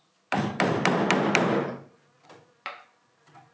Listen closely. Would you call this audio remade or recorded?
remade